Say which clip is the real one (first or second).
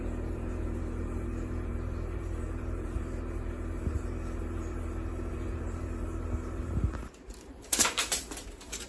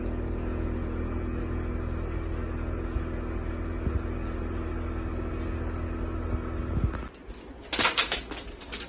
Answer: second